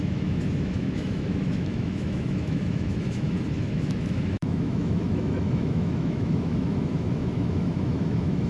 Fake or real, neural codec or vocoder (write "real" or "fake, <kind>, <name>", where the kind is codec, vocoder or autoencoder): fake, autoencoder, DAC-VAE